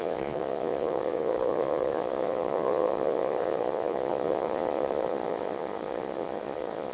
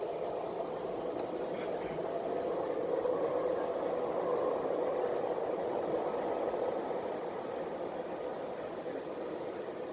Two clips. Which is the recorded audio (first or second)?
second